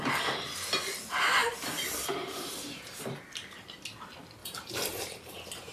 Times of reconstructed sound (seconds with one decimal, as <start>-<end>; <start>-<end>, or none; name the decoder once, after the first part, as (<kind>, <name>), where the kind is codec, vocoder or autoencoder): 1.4-3.2 (vocoder, BigVGAN v2); 4.4-5.3